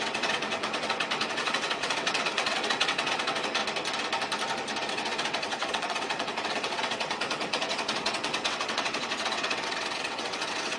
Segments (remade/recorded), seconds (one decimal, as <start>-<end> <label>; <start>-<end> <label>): 0.0-3.6 remade; 3.6-4.9 recorded; 4.9-10.8 remade